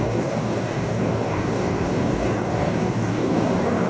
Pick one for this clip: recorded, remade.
remade